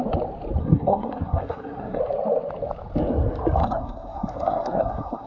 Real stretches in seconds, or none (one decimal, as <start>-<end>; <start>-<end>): 0.0-0.6; 2.0-3.6